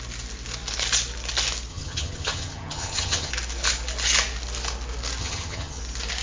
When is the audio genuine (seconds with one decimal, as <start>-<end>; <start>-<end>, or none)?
0.0-1.7; 3.3-5.2; 5.8-6.2